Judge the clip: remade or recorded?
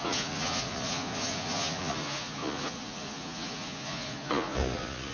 remade